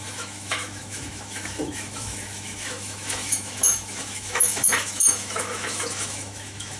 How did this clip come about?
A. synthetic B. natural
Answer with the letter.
A